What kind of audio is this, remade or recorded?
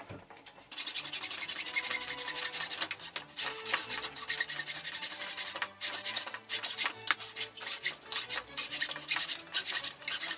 recorded